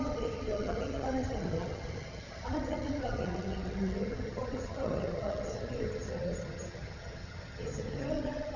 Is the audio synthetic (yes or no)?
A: yes